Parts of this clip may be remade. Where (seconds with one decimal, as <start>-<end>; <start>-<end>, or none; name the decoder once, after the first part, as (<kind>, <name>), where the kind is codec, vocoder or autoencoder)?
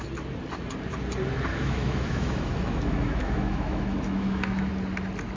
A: 1.5-4.7 (autoencoder, DAC-VAE)